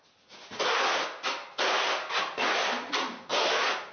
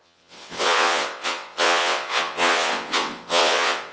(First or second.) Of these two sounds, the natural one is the first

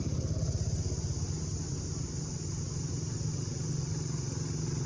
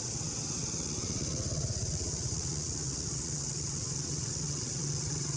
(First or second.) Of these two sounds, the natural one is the first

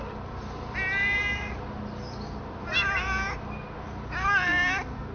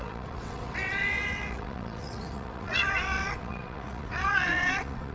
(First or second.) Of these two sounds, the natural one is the first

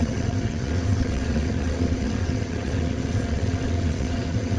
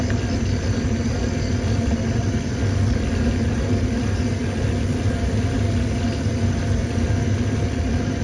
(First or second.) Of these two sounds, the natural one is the second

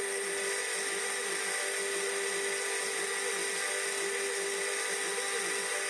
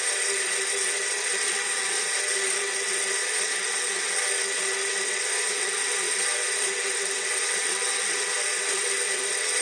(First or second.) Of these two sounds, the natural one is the first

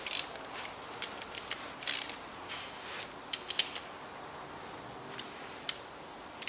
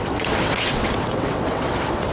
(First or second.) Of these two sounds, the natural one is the first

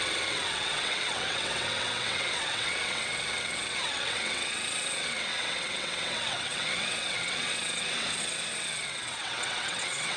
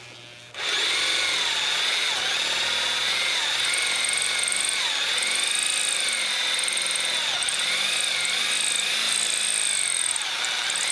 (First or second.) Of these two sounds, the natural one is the second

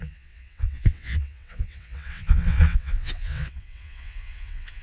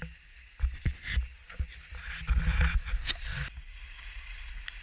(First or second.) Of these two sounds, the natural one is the second